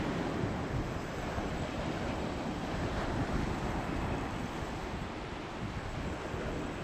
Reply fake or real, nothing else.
real